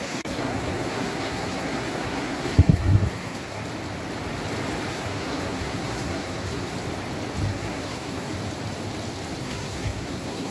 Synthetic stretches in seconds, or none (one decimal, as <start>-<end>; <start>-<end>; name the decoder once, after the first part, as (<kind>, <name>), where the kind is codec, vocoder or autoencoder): 0.0-3.6 (codec, SNAC); 4.9-6.7; 7.5-8.3; 9.4-10.5